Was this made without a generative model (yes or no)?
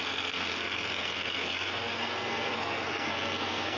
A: no